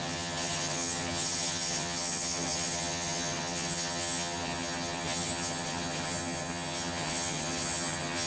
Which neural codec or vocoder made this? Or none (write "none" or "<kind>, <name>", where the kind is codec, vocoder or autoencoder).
vocoder, HiFi-GAN